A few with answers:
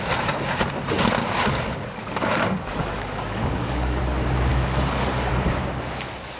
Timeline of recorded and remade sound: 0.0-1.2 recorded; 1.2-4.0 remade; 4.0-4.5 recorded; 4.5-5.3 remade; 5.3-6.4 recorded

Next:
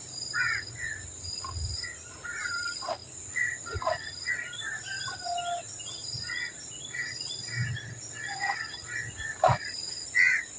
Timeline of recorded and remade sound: 0.0-10.6 recorded

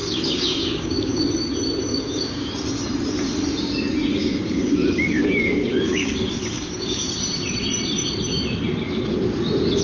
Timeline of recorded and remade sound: 0.0-1.3 remade; 1.3-1.9 recorded; 1.9-2.5 remade; 2.5-4.1 recorded; 4.1-7.1 remade; 7.1-9.8 recorded